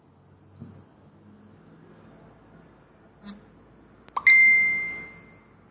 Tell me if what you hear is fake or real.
real